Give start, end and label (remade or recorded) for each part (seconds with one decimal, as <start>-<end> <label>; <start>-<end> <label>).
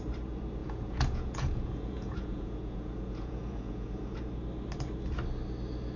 0.0-0.6 recorded; 0.6-4.2 remade; 4.2-6.0 recorded